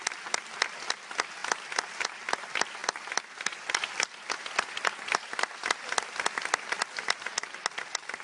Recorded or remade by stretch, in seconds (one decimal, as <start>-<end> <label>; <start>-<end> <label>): 0.0-8.2 recorded